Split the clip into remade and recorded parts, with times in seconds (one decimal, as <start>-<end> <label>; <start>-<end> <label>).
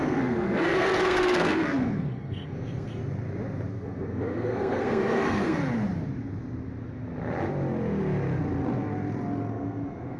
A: 0.0-3.0 remade; 3.0-3.7 recorded; 3.7-5.6 remade; 5.6-9.5 recorded; 9.5-10.2 remade